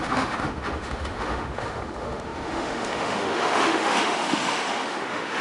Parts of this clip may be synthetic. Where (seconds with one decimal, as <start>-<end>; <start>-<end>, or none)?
0.0-5.4

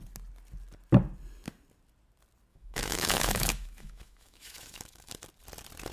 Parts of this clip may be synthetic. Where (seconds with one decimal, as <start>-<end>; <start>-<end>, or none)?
2.5-5.1

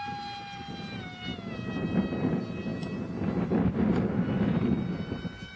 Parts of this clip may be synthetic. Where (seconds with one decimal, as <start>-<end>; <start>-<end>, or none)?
none